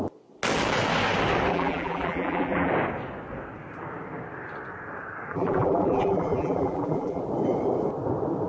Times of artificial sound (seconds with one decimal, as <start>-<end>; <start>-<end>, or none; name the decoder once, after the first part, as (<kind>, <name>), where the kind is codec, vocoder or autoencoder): 1.5-2.7 (vocoder, BigVGAN v2); 5.3-7.2